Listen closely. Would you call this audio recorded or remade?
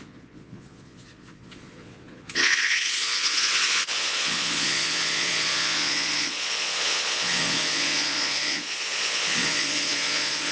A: remade